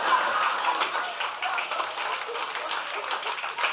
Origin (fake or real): real